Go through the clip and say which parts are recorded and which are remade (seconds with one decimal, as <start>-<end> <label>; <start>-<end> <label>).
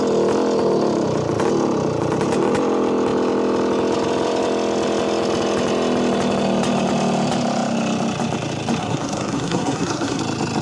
0.0-8.8 recorded; 8.8-10.2 remade; 10.2-10.6 recorded